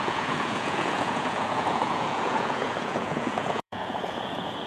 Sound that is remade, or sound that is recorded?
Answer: remade